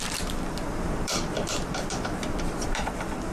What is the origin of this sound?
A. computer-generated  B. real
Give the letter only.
A